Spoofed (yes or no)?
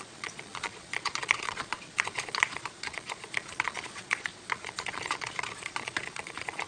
yes